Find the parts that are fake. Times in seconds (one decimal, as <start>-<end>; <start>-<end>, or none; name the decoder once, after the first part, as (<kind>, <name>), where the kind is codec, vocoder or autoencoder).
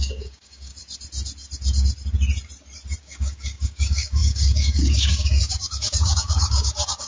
0.0-0.7 (codec, DAC); 3.0-7.1